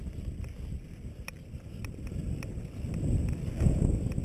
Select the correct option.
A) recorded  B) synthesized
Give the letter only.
A